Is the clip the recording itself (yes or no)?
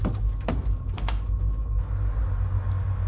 yes